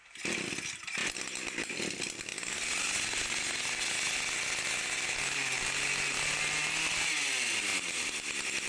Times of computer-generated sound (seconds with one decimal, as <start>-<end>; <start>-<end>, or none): none